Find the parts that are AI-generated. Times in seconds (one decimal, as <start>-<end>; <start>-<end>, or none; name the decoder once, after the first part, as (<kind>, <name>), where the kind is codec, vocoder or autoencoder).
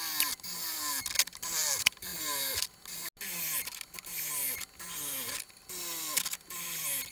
none